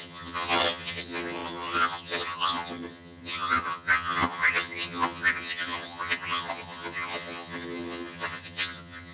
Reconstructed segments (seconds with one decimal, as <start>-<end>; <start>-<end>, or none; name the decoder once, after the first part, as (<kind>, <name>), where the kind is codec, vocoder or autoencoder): 0.0-9.1 (vocoder, HiFi-GAN)